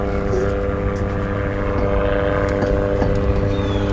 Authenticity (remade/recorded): recorded